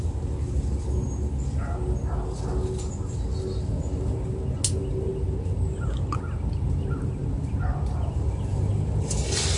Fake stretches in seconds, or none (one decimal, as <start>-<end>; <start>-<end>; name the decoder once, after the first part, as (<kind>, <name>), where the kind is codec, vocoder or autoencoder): none

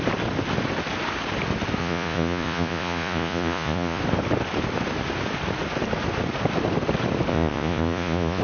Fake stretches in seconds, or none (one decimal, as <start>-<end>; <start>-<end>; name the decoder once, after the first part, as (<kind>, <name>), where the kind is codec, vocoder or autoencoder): 1.8-4.0 (vocoder, Vocos); 7.3-8.4

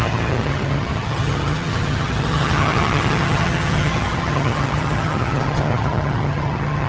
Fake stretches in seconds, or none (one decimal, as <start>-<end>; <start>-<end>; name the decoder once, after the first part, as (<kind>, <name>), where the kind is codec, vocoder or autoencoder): 0.0-6.9 (vocoder, HiFi-GAN)

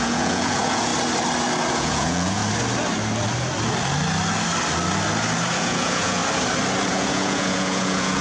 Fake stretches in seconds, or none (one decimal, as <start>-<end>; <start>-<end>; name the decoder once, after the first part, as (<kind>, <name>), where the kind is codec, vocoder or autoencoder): 0.0-0.9 (vocoder, Vocos); 1.7-2.4; 5.6-6.2; 6.9-8.2

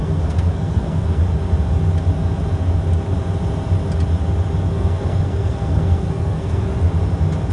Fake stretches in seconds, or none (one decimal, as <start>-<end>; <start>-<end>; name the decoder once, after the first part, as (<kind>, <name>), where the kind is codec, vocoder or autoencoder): 0.0-1.2 (codec, SNAC); 4.6-6.7

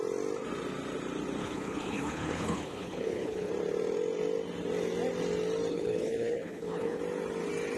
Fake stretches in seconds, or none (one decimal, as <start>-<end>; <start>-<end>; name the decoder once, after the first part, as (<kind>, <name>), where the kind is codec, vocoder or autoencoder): 1.4-3.5 (codec, HILCodec); 5.7-7.0

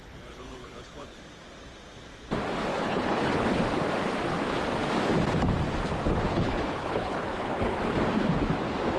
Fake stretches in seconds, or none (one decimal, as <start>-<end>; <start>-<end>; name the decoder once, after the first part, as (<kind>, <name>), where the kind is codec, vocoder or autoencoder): 0.0-1.2 (codec, HILCodec); 2.7-3.6; 6.3-7.8

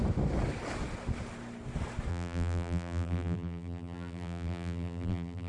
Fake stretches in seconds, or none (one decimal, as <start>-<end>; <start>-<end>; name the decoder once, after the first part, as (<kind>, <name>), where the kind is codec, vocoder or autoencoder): 2.1-5.5 (vocoder, BigVGAN v2)